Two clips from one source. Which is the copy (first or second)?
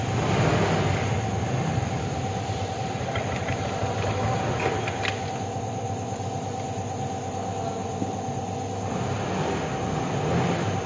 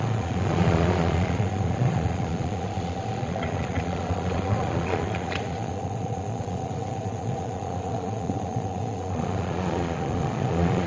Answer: second